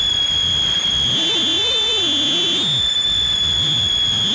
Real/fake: real